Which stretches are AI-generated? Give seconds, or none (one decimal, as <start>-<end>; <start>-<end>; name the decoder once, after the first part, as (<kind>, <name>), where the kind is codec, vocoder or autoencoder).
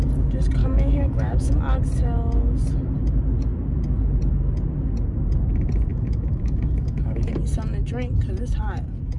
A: 0.6-1.5 (autoencoder, DAC-VAE); 5.9-7.3